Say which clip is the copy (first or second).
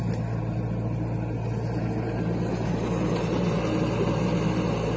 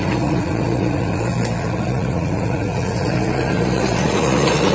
second